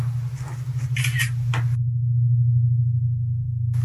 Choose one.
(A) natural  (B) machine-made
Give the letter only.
A